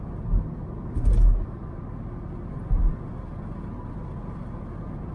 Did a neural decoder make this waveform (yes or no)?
no